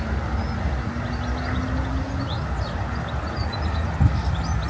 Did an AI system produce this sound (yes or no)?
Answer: no